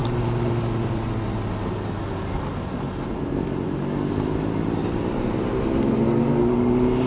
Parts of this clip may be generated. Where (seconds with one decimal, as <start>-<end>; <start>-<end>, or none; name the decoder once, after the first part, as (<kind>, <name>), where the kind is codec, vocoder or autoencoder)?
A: 4.8-5.5 (vocoder, BigVGAN v2)